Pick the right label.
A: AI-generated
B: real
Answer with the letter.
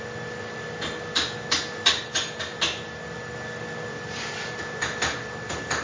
B